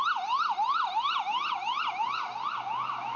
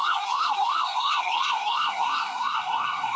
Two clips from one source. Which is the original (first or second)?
first